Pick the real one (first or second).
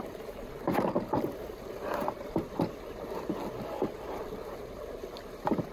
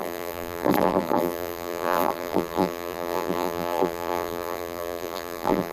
first